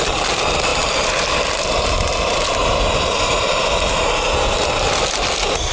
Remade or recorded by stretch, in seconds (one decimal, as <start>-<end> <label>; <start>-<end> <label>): 0.0-5.7 recorded